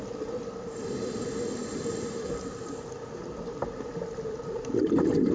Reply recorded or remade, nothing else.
recorded